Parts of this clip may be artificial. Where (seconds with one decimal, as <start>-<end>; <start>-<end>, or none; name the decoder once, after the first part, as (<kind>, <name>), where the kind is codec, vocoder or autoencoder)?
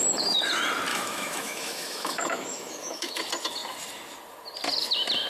0.9-3.2 (autoencoder, DAC-VAE)